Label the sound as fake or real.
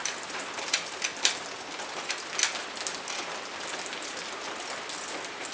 real